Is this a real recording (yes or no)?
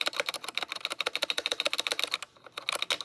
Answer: yes